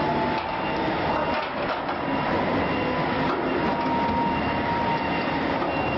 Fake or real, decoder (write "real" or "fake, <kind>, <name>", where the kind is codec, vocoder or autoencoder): real